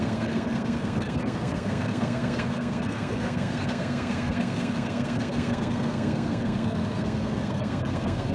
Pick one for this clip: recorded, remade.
remade